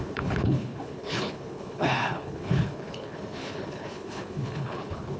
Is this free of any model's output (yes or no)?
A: no